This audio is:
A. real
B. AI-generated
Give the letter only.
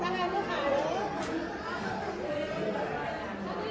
A